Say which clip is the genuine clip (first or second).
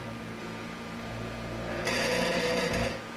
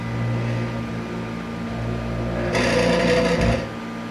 second